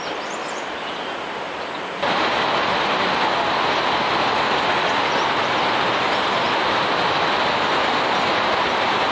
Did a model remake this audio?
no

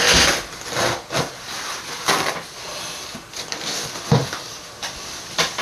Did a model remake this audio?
no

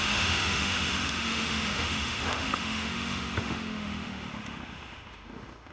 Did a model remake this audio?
yes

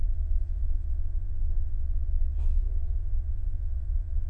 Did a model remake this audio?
yes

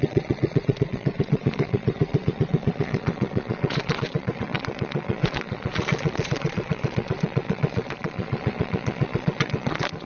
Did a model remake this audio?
yes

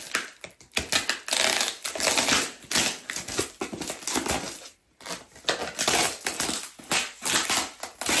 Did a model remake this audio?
no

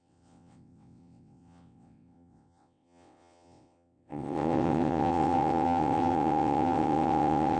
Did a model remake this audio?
yes